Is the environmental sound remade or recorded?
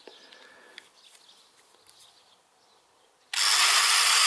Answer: recorded